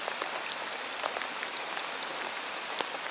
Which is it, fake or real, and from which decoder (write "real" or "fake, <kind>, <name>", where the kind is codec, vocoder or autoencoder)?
real